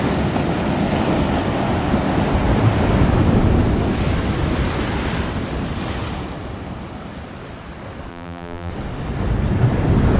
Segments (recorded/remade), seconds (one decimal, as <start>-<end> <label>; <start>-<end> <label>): 0.0-8.1 recorded; 8.1-8.7 remade; 8.7-10.2 recorded